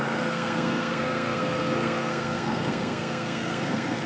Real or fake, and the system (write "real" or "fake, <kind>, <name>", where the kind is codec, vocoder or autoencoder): fake, codec, SNAC